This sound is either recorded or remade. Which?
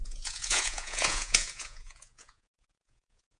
remade